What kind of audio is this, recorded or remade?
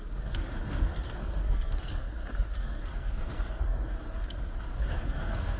remade